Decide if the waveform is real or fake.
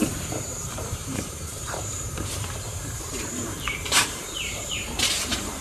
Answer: fake